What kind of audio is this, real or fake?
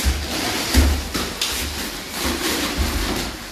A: real